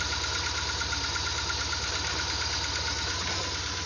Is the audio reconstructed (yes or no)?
no